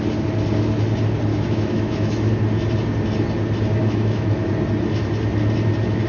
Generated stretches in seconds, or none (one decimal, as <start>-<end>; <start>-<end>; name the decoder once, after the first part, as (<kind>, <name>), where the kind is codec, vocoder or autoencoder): 1.3-2.3 (autoencoder, DAC-VAE); 3.8-4.5